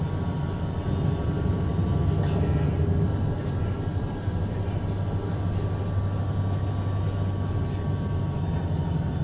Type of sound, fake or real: real